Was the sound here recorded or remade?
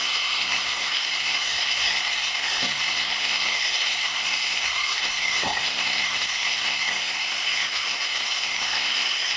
remade